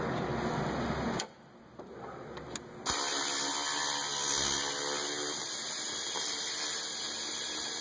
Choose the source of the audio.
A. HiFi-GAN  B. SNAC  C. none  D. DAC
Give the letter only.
C